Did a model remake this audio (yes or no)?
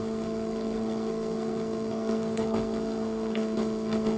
yes